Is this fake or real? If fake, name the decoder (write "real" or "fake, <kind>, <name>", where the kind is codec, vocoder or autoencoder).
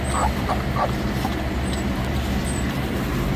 real